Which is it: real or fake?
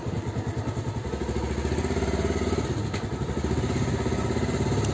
real